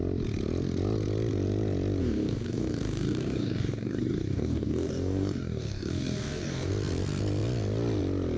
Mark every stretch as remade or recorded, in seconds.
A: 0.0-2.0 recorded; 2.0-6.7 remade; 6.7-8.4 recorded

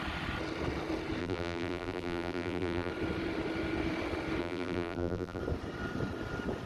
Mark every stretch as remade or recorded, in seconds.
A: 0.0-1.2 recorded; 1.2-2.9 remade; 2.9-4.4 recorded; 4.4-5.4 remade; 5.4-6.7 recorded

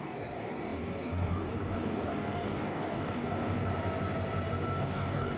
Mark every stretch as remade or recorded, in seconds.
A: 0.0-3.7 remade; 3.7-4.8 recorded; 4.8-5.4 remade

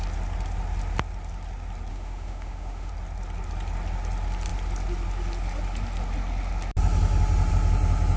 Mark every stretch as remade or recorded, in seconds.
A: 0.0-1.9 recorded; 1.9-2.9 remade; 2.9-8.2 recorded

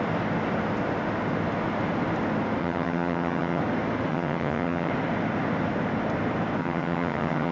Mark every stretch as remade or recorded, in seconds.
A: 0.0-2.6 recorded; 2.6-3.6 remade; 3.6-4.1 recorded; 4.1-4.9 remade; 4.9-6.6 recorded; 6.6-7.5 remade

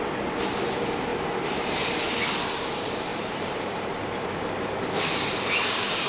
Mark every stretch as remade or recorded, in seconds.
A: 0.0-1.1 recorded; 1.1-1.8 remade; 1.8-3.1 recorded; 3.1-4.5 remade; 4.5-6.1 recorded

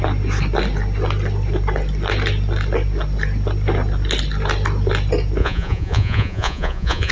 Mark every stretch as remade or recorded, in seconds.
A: 0.0-5.4 recorded; 5.4-7.1 remade